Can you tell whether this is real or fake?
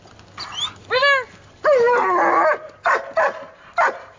real